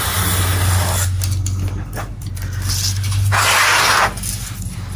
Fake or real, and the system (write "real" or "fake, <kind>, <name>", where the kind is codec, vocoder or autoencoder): real